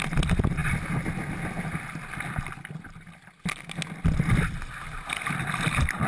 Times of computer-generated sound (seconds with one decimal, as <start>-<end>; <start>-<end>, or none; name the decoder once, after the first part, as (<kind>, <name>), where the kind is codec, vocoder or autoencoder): none